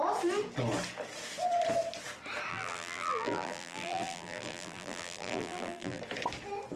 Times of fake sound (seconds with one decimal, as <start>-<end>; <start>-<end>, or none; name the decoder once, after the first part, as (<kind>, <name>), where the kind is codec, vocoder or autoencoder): 2.5-6.0 (vocoder, BigVGAN v2)